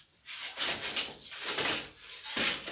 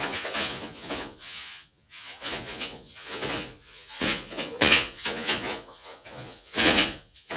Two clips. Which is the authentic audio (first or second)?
first